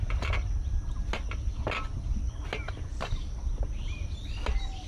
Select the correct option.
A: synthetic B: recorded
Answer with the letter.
B